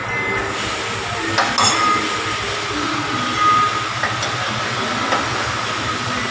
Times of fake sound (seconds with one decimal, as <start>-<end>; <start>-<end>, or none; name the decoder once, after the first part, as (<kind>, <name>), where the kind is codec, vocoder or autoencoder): none